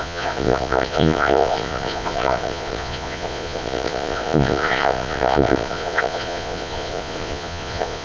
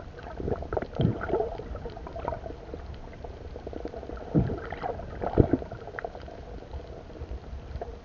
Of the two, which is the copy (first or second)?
first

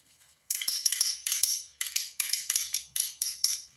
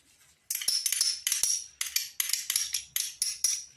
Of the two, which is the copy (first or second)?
first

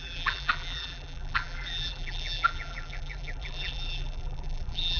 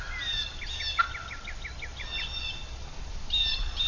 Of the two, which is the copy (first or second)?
first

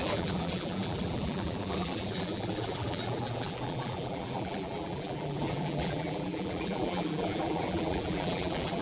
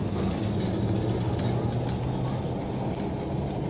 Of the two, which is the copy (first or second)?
first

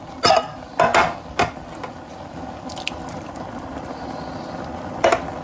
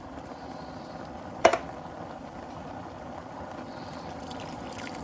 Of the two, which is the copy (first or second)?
second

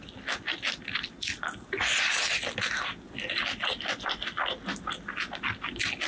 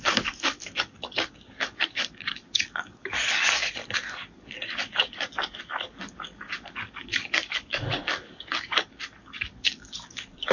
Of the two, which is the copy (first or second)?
second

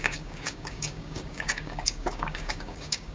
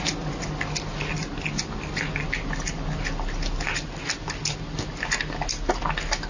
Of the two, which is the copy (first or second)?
first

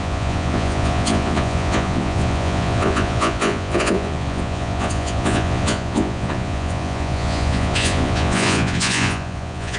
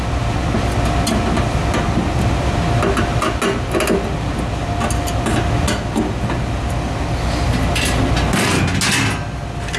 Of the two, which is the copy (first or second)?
first